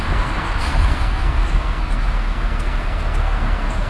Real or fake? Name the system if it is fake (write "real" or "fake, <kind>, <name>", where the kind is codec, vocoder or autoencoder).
fake, codec, SNAC